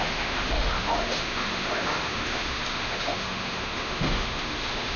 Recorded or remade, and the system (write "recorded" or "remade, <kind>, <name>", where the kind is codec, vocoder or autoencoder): remade, autoencoder, DAC-VAE